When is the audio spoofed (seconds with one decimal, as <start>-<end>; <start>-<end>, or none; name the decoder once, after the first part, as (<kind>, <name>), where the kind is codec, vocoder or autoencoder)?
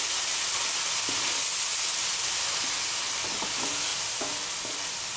none